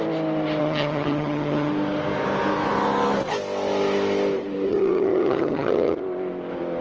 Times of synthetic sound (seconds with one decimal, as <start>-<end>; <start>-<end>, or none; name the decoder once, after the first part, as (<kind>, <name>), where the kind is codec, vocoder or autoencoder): 0.6-1.7 (vocoder, HiFi-GAN); 4.7-6.0